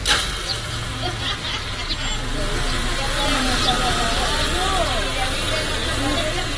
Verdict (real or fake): real